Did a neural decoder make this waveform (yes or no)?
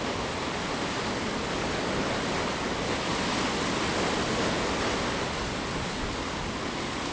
no